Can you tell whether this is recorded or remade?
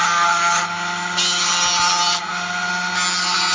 recorded